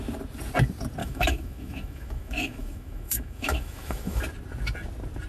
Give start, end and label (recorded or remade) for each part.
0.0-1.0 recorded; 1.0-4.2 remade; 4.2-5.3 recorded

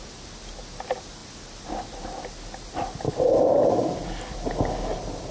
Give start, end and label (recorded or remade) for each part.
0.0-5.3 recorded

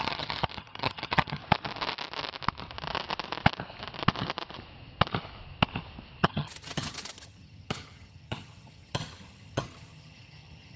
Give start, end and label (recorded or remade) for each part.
0.0-1.4 remade; 1.4-6.2 recorded; 6.2-10.8 remade

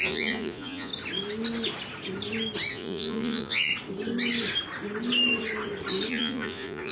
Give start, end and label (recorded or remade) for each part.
0.0-0.9 remade; 0.9-2.7 recorded; 2.7-3.7 remade; 3.7-6.1 recorded; 6.1-6.9 remade